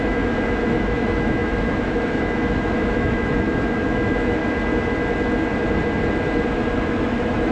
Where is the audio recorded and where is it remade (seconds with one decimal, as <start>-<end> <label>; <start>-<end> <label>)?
0.0-4.4 remade; 4.4-6.9 recorded; 6.9-7.5 remade